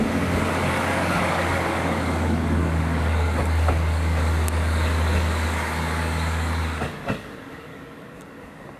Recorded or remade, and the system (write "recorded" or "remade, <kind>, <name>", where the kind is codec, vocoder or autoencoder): remade, codec, DAC